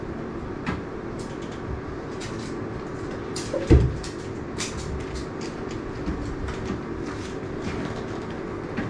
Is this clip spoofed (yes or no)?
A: no